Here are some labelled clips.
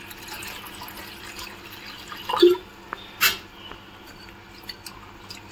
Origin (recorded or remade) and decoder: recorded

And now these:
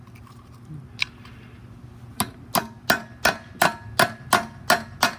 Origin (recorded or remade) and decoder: recorded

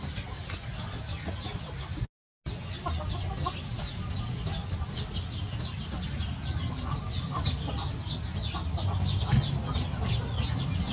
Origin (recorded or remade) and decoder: recorded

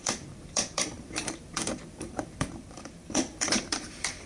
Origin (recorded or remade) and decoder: remade, vocoder, BigVGAN v2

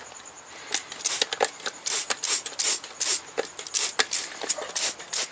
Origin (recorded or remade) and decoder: recorded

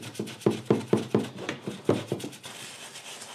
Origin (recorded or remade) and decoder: recorded